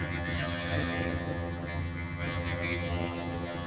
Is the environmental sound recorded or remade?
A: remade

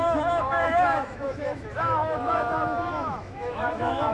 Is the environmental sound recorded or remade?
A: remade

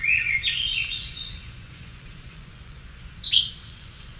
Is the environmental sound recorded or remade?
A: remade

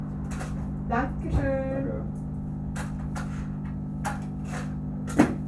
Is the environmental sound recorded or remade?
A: recorded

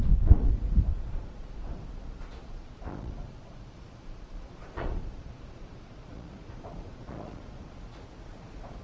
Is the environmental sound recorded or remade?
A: remade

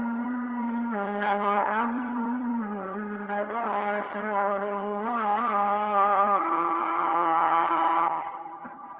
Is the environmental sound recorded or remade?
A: remade